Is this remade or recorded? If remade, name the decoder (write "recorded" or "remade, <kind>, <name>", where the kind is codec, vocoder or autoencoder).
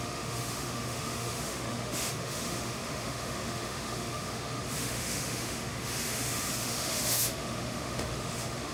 remade, autoencoder, DAC-VAE